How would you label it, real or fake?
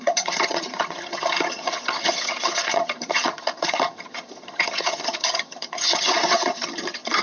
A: fake